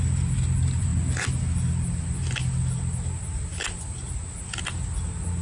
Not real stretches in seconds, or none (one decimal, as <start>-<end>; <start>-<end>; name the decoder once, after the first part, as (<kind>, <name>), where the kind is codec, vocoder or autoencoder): none